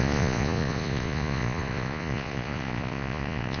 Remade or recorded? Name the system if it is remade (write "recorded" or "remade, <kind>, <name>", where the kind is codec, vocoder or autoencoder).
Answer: remade, vocoder, Vocos